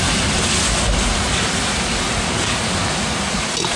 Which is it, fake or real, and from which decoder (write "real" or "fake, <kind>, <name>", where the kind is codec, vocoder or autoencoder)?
real